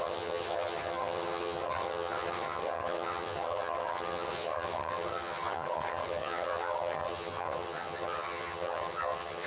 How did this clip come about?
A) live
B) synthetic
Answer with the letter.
B